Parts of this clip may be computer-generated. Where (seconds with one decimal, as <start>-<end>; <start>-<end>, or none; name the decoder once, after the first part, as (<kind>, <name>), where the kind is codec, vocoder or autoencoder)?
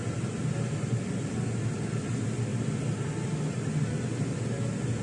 none